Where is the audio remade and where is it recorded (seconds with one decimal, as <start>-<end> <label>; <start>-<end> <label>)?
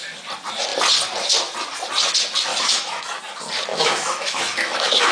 0.0-2.5 recorded; 2.5-3.2 remade; 3.2-3.7 recorded; 3.7-5.1 remade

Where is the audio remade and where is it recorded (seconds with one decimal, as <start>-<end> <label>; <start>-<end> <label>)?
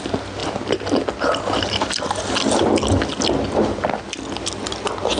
0.0-5.2 recorded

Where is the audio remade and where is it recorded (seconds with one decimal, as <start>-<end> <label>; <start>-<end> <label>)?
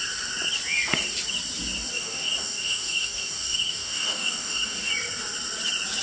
0.0-1.9 recorded; 1.9-4.9 remade; 4.9-6.0 recorded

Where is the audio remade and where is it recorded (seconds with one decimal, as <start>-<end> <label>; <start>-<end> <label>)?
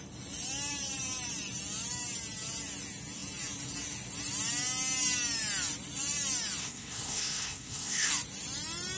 0.0-6.6 recorded; 6.6-8.1 remade; 8.1-9.0 recorded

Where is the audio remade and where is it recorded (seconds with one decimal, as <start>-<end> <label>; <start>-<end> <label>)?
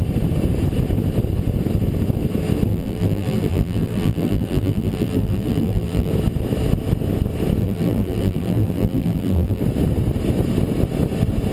0.0-2.7 recorded; 2.7-6.1 remade; 6.1-7.6 recorded; 7.6-9.6 remade; 9.6-11.5 recorded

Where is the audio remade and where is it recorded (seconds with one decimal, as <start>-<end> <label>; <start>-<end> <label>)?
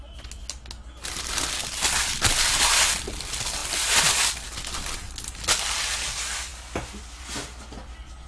0.0-8.3 recorded